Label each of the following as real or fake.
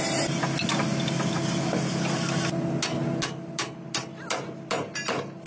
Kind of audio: real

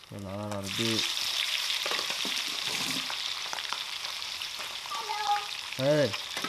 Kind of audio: fake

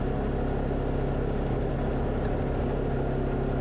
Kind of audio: real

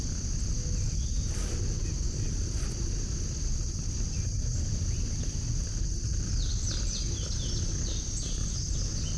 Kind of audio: real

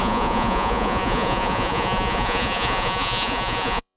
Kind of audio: fake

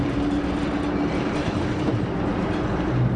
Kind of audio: real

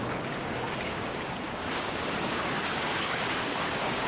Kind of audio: fake